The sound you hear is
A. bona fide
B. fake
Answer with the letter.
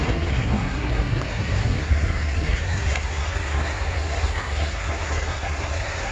B